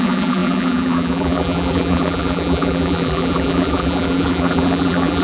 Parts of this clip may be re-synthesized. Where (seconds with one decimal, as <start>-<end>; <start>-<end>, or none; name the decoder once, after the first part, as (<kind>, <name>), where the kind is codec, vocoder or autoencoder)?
0.0-5.2 (vocoder, BigVGAN v2)